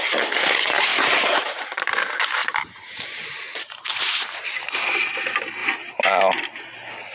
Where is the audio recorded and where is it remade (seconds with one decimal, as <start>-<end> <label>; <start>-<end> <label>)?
0.0-0.9 recorded; 0.9-2.0 remade; 2.0-2.4 recorded; 2.4-4.0 remade; 4.0-5.6 recorded; 5.6-6.2 remade; 6.2-7.1 recorded

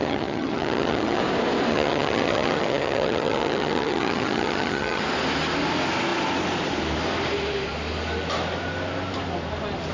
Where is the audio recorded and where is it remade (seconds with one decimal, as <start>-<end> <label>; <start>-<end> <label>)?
0.0-1.2 remade; 1.2-1.7 recorded; 1.7-5.0 remade; 5.0-9.9 recorded

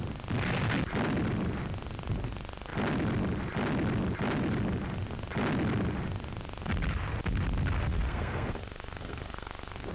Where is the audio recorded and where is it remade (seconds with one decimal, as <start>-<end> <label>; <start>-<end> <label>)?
0.0-7.9 recorded; 7.9-9.9 remade

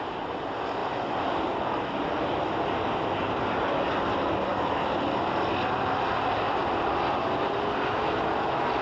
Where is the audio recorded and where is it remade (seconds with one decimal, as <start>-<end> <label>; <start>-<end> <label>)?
0.0-0.8 recorded; 0.8-2.4 remade; 2.4-8.8 recorded

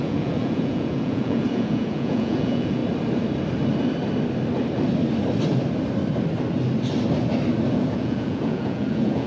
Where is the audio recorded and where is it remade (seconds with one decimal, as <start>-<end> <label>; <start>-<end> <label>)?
0.0-2.8 remade; 2.8-7.7 recorded; 7.7-9.3 remade

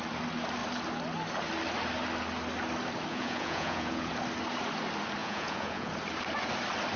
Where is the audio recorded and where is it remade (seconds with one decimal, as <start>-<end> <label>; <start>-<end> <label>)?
0.0-3.1 recorded; 3.1-4.1 remade; 4.1-5.2 recorded; 5.2-5.9 remade; 5.9-7.0 recorded